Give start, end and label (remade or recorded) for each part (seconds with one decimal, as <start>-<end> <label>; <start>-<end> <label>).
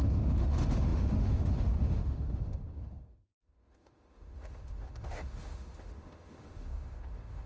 0.0-7.5 remade